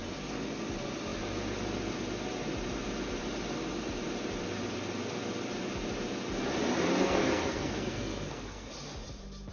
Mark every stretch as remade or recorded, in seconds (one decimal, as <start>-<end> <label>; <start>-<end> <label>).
0.0-7.0 recorded; 7.0-8.7 remade; 8.7-9.5 recorded